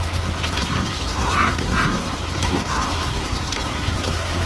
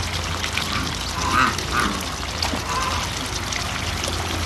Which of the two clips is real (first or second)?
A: second